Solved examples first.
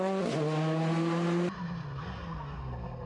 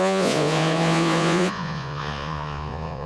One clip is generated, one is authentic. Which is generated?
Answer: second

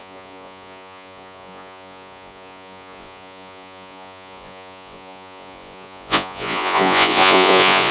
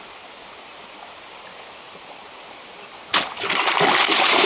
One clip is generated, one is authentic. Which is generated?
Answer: first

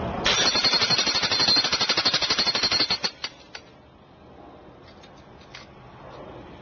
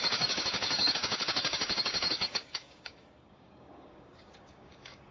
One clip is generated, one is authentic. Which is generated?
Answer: second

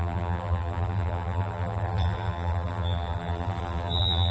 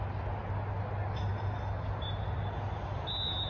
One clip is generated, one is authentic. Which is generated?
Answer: first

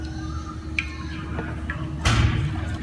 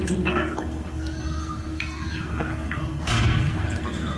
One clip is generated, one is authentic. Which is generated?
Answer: second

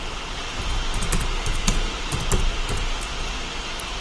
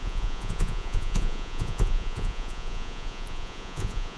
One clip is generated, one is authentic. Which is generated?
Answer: second